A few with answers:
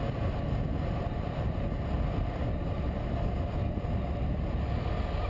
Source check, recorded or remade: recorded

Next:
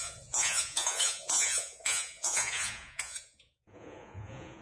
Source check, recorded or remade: remade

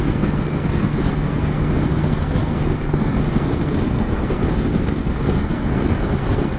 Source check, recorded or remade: remade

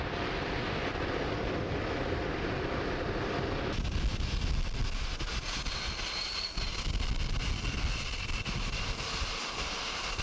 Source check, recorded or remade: recorded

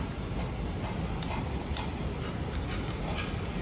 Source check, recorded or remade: recorded